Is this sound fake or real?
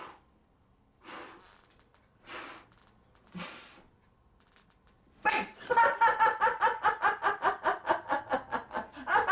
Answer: real